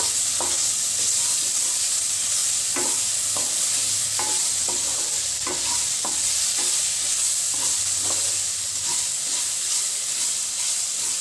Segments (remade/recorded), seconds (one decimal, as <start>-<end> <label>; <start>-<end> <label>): 0.0-11.2 recorded